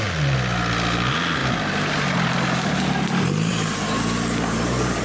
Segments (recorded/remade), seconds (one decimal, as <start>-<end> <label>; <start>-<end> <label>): 0.0-3.5 recorded; 3.5-5.0 remade